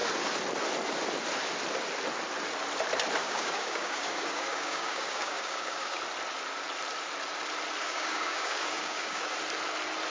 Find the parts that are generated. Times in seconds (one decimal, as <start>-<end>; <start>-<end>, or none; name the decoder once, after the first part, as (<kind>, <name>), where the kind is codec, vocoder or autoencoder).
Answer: 3.2-6.0 (codec, DAC); 7.8-9.3